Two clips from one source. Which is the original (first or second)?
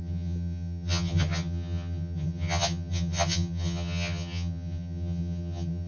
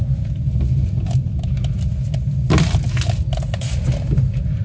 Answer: second